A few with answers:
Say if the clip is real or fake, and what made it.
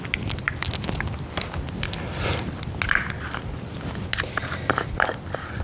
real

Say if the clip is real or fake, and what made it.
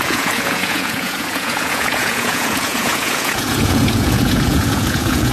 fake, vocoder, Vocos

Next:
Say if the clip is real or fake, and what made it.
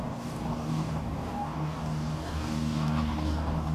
fake, codec, DAC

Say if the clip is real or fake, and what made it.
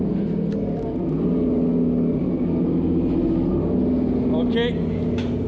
real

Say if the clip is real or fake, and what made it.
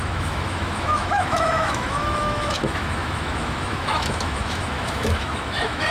fake, autoencoder, DAC-VAE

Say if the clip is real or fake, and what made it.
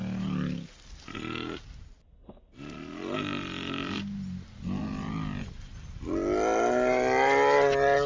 real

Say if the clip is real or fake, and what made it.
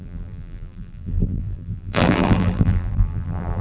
fake, vocoder, BigVGAN v2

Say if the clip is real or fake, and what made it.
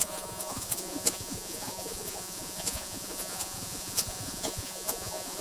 fake, vocoder, Vocos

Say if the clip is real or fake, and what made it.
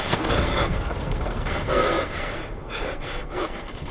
fake, codec, SNAC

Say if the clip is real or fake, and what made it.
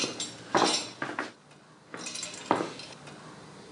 real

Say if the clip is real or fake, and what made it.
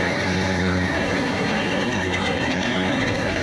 fake, codec, SNAC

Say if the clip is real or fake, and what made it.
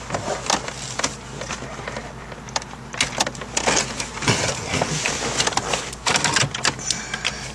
real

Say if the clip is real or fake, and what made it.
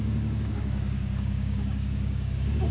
fake, codec, DAC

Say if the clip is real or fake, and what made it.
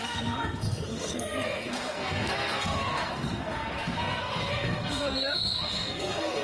fake, codec, SNAC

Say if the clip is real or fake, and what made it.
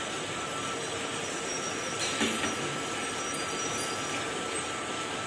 real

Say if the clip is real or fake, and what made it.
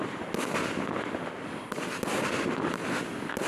real